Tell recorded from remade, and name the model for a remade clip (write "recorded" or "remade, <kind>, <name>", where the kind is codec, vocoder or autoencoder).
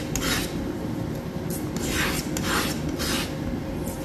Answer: recorded